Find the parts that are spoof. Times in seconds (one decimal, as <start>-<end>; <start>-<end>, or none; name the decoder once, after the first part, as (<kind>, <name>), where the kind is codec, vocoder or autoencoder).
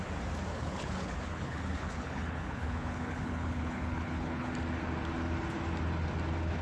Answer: 0.5-4.5 (codec, HILCodec)